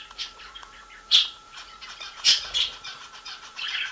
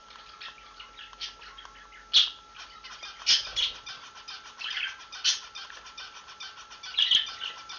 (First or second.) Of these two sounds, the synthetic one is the first